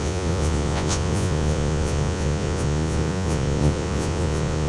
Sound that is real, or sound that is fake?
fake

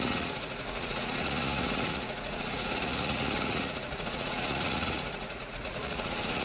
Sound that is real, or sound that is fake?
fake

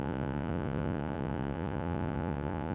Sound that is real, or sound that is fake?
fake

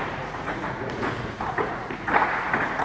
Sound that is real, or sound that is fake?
fake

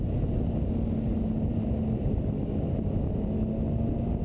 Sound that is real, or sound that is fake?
real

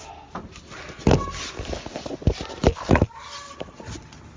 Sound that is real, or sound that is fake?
real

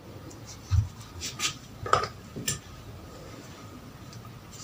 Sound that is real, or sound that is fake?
real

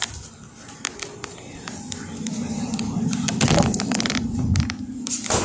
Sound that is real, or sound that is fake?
real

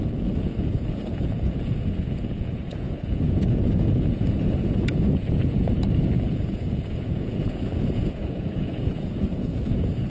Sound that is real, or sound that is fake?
fake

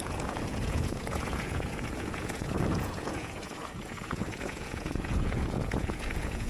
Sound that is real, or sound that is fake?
fake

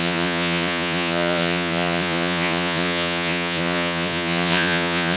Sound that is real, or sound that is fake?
fake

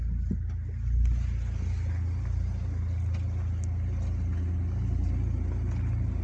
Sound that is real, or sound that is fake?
real